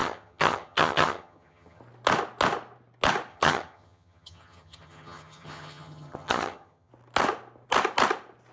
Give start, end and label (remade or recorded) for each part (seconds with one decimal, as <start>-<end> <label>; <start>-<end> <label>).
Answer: 0.0-1.8 remade; 1.8-3.3 recorded; 3.3-6.9 remade; 6.9-8.5 recorded